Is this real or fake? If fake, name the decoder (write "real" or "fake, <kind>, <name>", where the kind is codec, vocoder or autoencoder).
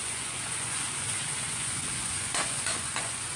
fake, vocoder, Vocos